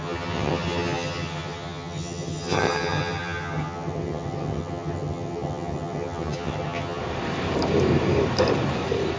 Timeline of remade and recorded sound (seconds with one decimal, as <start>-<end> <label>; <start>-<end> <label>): 0.0-7.0 remade; 7.0-9.2 recorded